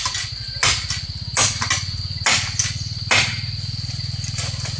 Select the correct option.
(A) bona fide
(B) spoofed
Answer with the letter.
A